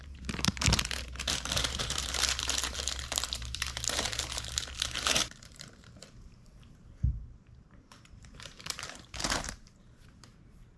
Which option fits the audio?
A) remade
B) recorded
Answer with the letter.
A